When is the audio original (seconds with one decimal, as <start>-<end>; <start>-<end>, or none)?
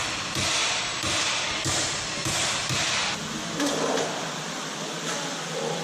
none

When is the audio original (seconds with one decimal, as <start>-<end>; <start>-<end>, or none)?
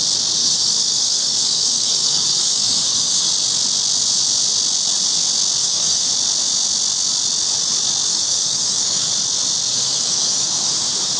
0.0-0.4; 3.3-5.6; 6.1-8.1; 9.1-9.7; 10.7-11.2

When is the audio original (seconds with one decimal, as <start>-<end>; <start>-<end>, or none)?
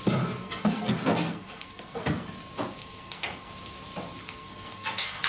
0.0-0.4; 2.3-2.8; 3.5-4.2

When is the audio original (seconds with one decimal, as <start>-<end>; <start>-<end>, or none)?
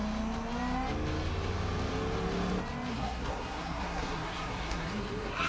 0.0-2.9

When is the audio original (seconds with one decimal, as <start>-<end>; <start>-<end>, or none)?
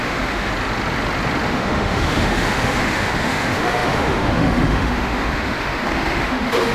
0.5-1.5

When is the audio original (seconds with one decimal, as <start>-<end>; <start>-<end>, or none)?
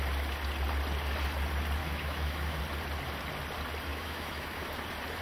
0.0-1.8; 2.6-3.9; 4.7-5.2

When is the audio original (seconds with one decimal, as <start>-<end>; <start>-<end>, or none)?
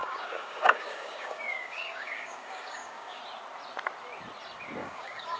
3.2-4.8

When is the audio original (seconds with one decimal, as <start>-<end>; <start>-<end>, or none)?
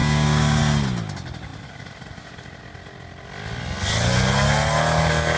0.6-5.4